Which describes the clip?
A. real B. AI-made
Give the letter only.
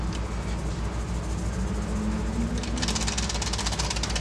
A